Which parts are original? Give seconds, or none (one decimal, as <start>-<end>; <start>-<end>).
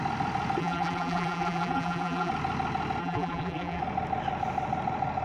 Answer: 0.0-0.6; 2.3-3.0; 3.8-5.2